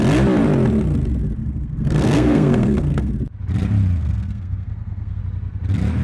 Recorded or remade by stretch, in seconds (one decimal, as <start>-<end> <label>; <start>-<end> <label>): 0.0-1.4 recorded; 1.4-3.1 remade; 3.1-4.0 recorded; 4.0-5.2 remade; 5.2-6.0 recorded